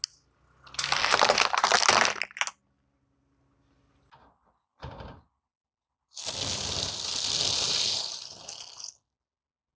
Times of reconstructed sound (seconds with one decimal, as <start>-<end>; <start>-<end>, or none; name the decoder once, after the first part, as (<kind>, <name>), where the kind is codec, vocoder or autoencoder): 4.7-6.5 (vocoder, BigVGAN v2)